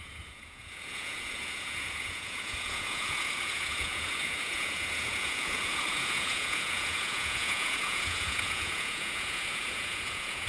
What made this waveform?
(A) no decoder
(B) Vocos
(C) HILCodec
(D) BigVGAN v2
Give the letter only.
B